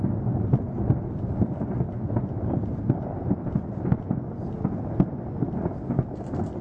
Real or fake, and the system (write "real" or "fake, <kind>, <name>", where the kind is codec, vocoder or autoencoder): real